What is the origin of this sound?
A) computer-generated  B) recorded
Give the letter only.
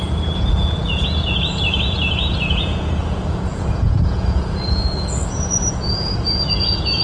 A